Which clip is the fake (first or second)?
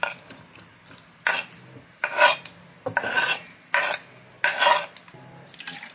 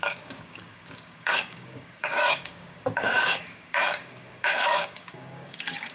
second